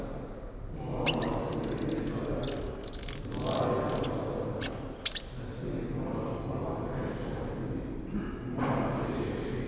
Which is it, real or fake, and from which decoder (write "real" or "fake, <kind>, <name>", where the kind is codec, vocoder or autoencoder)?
real